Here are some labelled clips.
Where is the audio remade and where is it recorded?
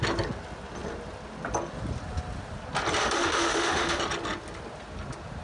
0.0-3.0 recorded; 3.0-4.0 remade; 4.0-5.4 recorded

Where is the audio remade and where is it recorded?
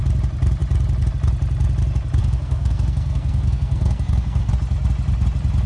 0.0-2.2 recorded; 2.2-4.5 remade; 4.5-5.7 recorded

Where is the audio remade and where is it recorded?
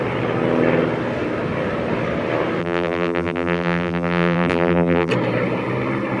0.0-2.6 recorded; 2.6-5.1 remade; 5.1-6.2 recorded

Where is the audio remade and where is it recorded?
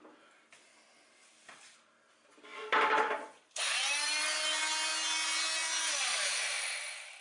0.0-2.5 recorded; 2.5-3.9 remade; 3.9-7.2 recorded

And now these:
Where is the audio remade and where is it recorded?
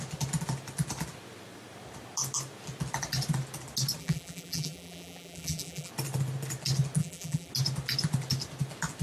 0.0-4.0 recorded; 4.0-5.9 remade; 5.9-7.0 recorded; 7.0-7.5 remade; 7.5-9.0 recorded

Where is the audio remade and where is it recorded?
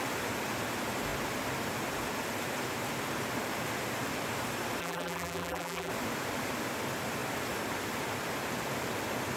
0.0-4.8 recorded; 4.8-5.9 remade; 5.9-9.4 recorded